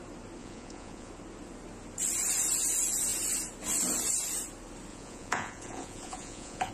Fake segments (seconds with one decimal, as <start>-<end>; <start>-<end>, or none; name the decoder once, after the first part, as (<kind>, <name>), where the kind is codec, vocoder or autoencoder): 0.4-1.1 (vocoder, Vocos); 4.9-6.7